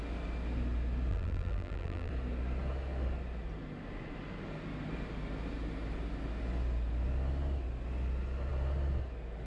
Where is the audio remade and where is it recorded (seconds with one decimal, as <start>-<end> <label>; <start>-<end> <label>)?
0.0-1.1 recorded; 1.1-2.1 remade; 2.1-9.5 recorded